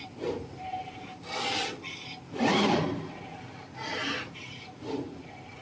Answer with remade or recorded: recorded